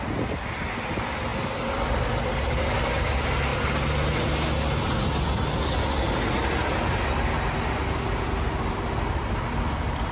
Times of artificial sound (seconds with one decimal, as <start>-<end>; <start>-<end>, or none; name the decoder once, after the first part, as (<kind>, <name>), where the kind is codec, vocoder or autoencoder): none